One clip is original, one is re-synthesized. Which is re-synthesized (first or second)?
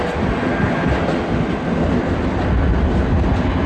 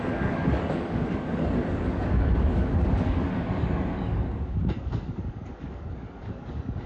second